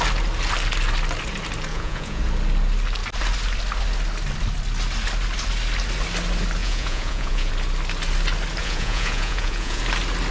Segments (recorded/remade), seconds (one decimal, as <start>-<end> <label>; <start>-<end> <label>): 0.0-1.7 recorded; 1.7-2.2 remade; 2.2-6.6 recorded; 6.6-7.5 remade; 7.5-8.6 recorded; 8.6-9.8 remade; 9.8-10.3 recorded